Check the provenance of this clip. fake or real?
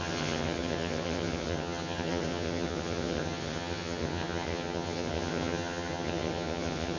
fake